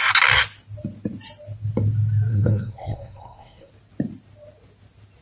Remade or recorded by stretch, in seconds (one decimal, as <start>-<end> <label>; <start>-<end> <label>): 0.0-2.3 recorded; 2.3-3.7 remade; 3.7-5.2 recorded